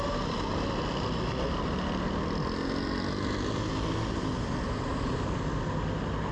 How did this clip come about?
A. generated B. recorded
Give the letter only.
B